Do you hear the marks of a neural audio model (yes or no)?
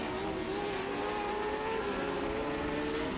no